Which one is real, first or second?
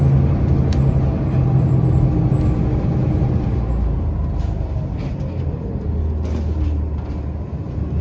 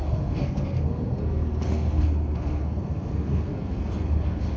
first